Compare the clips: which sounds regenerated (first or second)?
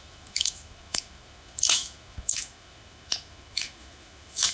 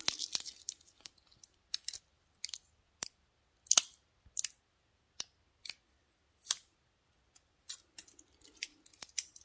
first